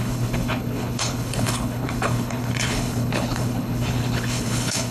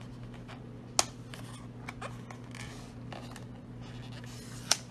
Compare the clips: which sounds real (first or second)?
second